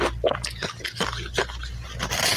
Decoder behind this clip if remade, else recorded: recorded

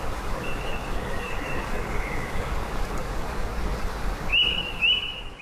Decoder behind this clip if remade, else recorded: remade, codec, DAC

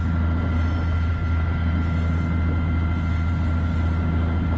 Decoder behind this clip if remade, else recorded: recorded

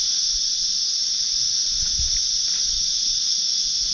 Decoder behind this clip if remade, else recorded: recorded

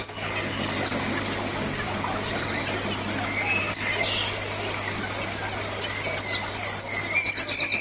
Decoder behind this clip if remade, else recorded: recorded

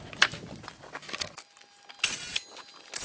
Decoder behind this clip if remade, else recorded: recorded